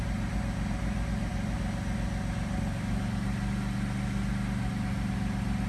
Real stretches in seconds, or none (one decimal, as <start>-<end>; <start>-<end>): 0.0-5.7